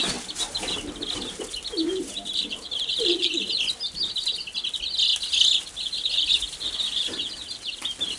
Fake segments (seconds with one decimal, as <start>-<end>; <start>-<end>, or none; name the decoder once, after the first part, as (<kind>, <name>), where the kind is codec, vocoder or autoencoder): 1.8-3.5 (vocoder, BigVGAN v2)